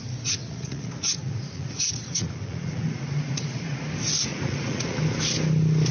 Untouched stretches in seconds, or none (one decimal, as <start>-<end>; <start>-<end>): 0.0-0.4; 3.9-4.3; 5.0-5.9

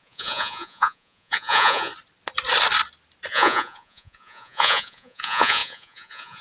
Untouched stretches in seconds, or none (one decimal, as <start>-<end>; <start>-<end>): 1.9-3.3

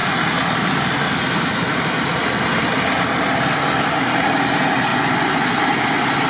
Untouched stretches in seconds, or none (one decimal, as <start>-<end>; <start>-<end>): 0.0-4.9; 5.5-6.3

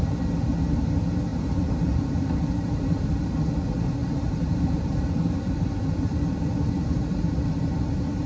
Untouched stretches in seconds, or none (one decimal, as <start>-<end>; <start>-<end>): 0.0-1.3; 3.2-4.0; 7.6-8.3